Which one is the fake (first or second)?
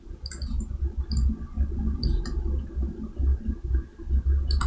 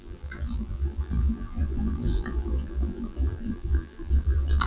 second